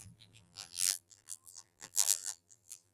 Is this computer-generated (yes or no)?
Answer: yes